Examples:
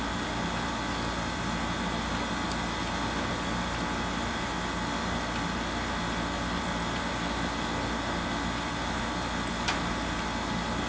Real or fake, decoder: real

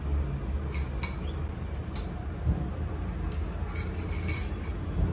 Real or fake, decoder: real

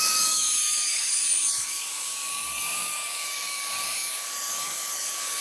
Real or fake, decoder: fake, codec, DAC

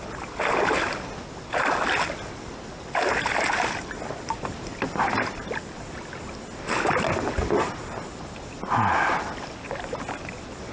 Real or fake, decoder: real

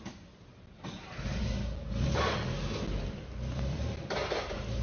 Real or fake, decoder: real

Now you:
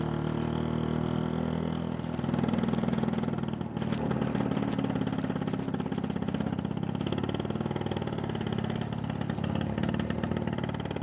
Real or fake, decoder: real